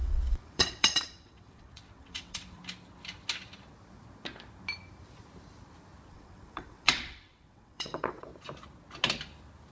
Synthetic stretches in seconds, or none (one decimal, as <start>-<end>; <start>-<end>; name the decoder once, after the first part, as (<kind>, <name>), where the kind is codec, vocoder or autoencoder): 0.0-2.6 (vocoder, WaveNeXt); 6.1-8.3